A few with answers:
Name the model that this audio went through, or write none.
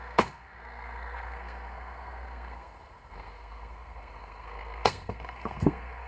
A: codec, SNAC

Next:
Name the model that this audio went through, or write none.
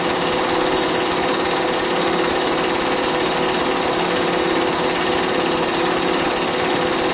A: none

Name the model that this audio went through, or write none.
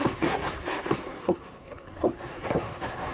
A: codec, SNAC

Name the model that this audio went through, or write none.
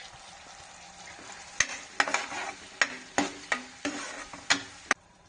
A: none